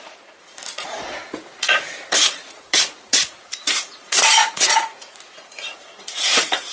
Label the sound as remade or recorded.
remade